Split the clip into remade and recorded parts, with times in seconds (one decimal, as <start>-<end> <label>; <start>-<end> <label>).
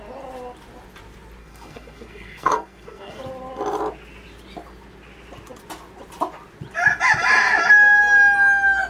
0.0-1.4 recorded; 1.4-3.2 remade; 3.2-8.9 recorded